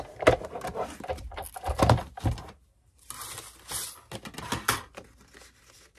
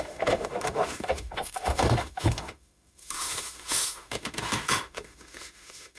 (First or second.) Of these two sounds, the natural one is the first